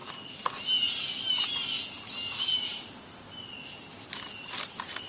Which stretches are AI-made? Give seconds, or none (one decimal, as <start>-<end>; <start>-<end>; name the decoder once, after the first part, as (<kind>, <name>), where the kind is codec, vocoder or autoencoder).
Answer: 2.7-3.4 (vocoder, BigVGAN v2)